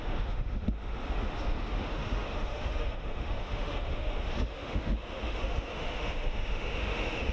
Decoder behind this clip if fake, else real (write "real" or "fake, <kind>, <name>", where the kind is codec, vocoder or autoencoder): fake, autoencoder, DAC-VAE